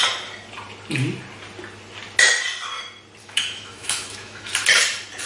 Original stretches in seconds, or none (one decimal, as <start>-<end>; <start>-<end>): 0.0-3.2; 4.5-5.3